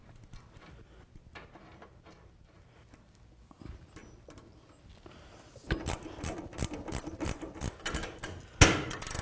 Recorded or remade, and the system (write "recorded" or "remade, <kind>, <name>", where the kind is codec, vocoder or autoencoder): recorded